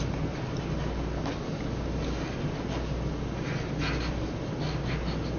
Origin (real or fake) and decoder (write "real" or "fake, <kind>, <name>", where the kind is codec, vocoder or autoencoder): real